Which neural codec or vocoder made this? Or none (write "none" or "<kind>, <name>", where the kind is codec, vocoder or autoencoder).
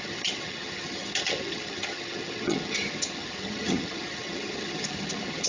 vocoder, HiFi-GAN